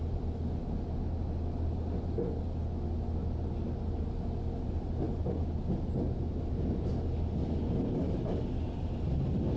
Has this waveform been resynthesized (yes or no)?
no